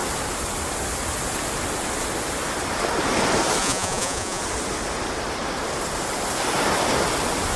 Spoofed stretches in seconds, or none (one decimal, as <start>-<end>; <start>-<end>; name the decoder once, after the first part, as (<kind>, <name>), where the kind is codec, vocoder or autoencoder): 3.6-4.4 (vocoder, Vocos)